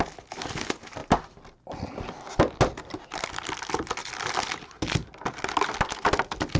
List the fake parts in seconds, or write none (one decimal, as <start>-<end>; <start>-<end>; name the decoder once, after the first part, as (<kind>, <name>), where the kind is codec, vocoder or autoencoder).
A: none